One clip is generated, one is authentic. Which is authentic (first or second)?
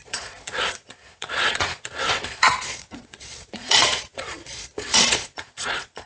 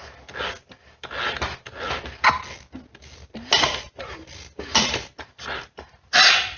second